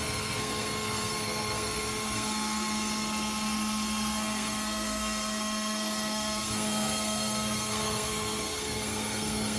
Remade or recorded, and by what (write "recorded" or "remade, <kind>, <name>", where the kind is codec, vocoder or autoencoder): remade, codec, SNAC